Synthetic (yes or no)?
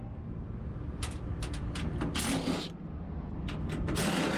no